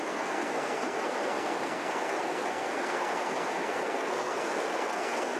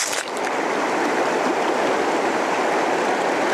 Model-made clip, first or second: first